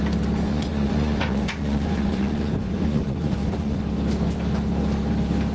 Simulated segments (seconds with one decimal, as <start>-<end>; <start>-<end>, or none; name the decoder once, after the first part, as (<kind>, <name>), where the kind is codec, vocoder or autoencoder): 0.5-3.8 (vocoder, Vocos)